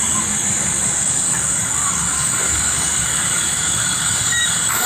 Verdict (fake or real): fake